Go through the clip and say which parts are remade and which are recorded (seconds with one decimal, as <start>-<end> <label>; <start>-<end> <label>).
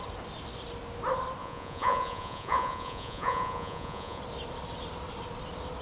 0.0-1.4 recorded; 1.4-4.2 remade; 4.2-5.8 recorded